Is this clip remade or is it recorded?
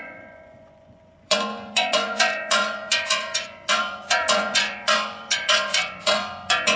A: remade